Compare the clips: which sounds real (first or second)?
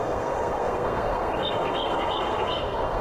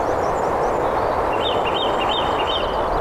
second